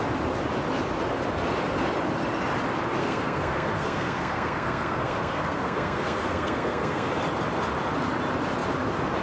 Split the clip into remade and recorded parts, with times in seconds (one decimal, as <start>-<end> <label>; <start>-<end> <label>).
0.0-3.0 recorded; 3.0-7.1 remade; 7.1-9.2 recorded